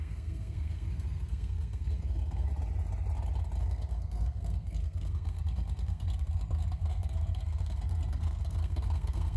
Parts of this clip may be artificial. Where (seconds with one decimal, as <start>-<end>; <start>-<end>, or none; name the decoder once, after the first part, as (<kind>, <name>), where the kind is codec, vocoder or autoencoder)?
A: 0.0-2.5 (codec, SNAC); 3.6-9.4